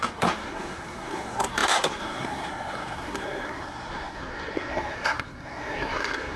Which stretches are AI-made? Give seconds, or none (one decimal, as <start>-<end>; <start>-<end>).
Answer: 0.0-6.4

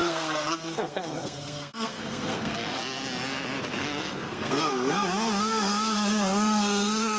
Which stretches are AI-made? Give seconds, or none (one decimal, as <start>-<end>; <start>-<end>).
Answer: 0.0-2.8; 3.8-7.2